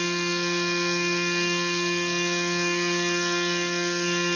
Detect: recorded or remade remade